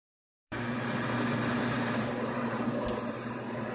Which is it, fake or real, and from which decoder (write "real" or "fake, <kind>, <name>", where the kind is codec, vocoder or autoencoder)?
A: fake, vocoder, BigVGAN v2